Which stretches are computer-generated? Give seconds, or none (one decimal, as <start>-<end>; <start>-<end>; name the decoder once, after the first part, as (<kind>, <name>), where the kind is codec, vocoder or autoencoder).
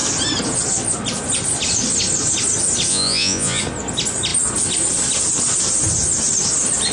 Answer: 2.9-3.6 (vocoder, Vocos)